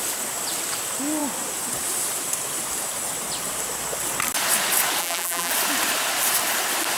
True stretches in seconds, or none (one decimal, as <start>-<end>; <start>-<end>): 0.0-5.0; 5.5-7.0